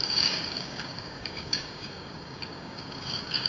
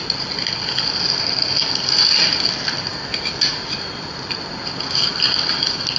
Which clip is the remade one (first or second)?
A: first